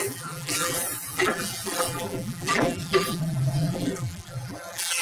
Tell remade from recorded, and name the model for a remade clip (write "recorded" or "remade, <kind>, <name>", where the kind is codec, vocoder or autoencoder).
remade, vocoder, BigVGAN v2